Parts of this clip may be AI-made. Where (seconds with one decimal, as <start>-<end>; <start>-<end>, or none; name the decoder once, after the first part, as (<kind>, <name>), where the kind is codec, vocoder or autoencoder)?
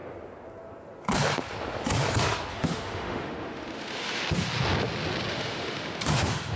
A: 2.5-4.2 (autoencoder, DAC-VAE); 5.3-6.6